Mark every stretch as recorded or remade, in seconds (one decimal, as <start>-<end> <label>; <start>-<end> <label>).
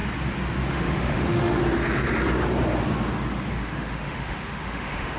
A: 0.0-0.7 recorded; 0.7-1.6 remade; 1.6-3.5 recorded; 3.5-5.2 remade